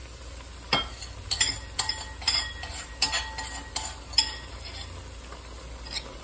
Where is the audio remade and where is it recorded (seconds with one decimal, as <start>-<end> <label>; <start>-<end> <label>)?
0.0-6.2 recorded